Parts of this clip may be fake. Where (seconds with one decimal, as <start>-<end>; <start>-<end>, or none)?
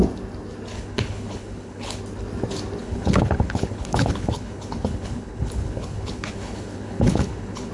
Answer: 0.7-2.0; 2.8-7.7